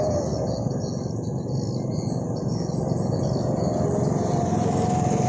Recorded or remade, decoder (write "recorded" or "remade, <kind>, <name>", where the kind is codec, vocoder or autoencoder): recorded